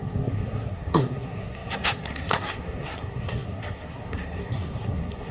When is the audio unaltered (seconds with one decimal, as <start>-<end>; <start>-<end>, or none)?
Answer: none